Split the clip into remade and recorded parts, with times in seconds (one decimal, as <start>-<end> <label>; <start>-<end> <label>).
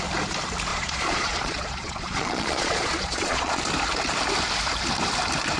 0.0-0.7 recorded; 0.7-3.6 remade; 3.6-5.6 recorded